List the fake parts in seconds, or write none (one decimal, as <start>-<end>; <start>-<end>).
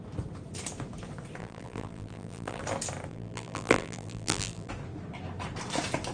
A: 1.4-2.6; 3.1-4.7